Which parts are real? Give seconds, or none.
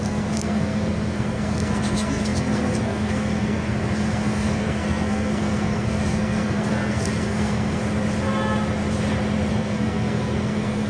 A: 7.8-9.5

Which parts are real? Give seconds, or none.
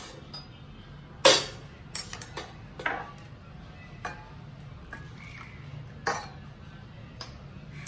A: 0.0-7.9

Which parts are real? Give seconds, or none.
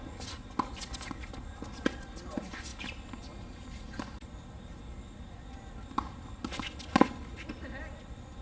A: 0.0-8.4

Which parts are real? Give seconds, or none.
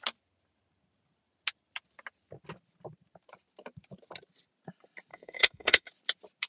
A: 0.0-5.1; 5.9-6.5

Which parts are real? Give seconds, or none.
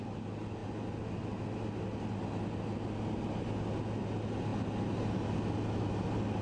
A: 0.0-6.4